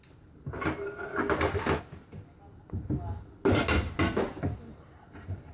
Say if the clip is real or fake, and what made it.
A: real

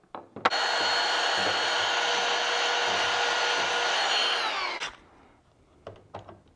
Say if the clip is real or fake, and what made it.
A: real